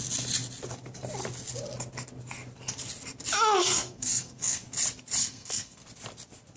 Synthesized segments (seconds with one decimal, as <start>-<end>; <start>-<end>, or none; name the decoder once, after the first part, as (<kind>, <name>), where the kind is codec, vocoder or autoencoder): 3.6-4.6 (codec, SNAC); 5.2-5.8